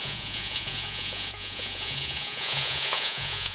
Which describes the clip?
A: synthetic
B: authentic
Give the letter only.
A